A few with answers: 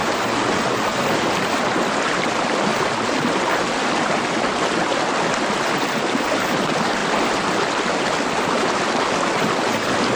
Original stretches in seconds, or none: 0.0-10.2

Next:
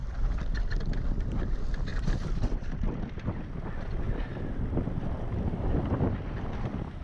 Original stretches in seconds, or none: 1.9-6.1